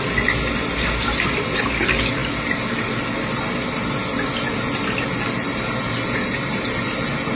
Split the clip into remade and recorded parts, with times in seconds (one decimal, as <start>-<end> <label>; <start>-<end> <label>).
0.0-7.4 recorded